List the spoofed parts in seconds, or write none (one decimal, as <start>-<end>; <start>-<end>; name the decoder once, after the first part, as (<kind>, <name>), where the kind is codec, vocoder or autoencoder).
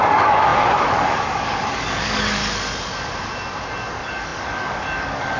0.0-2.4 (codec, DAC); 3.9-5.4